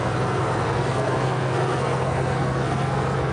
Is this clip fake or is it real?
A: fake